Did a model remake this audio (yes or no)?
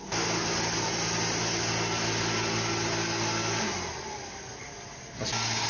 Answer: no